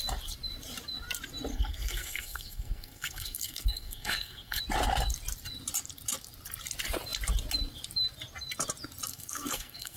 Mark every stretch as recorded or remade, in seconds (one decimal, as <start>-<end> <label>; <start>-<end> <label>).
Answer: 0.0-1.5 recorded; 1.5-4.6 remade; 4.6-9.1 recorded; 9.1-10.0 remade